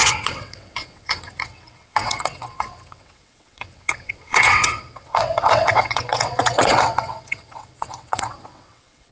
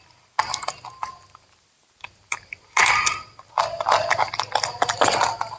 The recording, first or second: second